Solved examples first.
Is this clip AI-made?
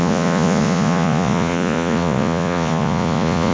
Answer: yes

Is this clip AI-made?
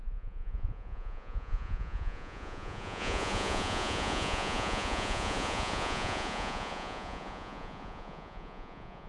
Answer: yes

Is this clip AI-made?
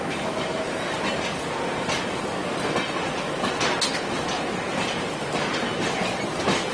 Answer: no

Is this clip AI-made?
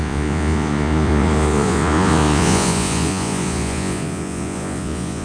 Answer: yes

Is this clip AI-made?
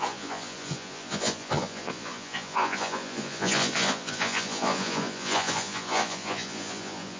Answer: yes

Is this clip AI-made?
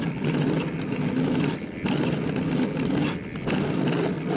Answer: no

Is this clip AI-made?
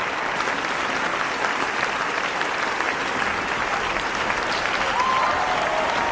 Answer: no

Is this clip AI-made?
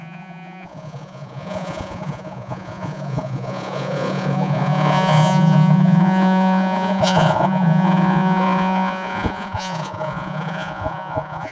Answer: yes